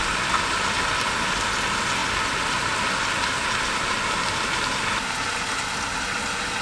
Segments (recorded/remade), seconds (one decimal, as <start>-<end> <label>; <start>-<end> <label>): 0.0-6.6 recorded